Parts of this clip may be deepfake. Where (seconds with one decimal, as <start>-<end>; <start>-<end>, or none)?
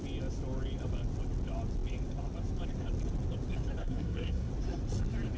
3.8-4.5